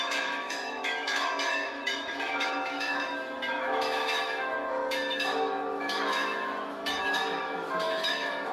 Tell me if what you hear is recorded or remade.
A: remade